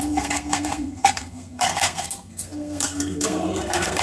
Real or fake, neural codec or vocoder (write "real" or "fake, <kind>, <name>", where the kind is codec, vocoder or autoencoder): fake, codec, SNAC